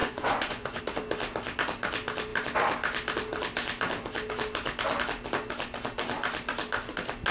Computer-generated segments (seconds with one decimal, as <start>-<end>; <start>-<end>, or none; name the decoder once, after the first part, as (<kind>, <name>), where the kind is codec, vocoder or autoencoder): 0.0-0.8 (vocoder, Vocos)